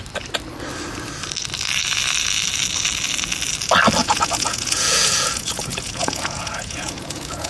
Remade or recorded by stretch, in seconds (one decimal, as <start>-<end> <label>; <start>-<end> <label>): 0.0-4.0 recorded; 4.0-7.5 remade